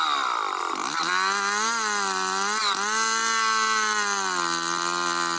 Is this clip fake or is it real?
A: real